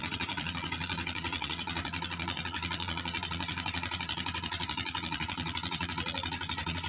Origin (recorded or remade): remade